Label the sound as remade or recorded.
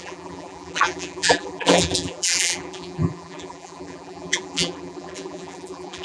remade